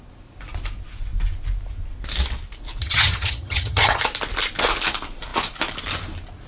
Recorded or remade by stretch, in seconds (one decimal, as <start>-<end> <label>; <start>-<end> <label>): 0.0-2.8 recorded; 2.8-4.0 remade; 4.0-6.5 recorded